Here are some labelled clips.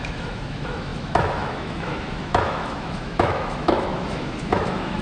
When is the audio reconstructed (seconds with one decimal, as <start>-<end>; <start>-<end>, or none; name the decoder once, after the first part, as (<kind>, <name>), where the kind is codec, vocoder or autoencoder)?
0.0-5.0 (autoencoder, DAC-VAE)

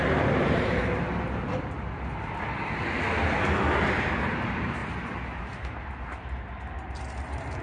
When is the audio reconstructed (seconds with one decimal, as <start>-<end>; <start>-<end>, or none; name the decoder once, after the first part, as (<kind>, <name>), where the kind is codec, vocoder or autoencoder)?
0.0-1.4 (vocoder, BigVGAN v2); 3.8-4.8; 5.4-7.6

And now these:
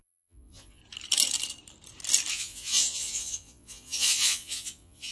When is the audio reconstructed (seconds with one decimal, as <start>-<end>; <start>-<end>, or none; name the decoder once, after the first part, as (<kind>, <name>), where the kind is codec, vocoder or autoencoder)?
0.0-0.8 (vocoder, Vocos); 2.3-5.1

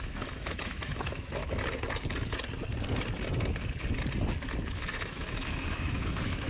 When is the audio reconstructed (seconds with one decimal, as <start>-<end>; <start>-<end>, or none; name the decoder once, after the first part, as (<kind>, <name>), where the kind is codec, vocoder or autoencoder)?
0.0-1.4 (autoencoder, DAC-VAE); 4.7-6.5